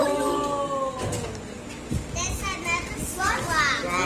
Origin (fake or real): real